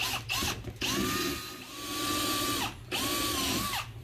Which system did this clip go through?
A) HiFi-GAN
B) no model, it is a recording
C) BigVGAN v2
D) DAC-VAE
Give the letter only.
B